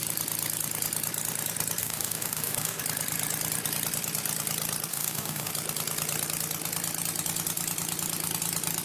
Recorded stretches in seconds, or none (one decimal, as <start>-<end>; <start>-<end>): 0.0-1.8; 2.8-4.9; 5.5-8.8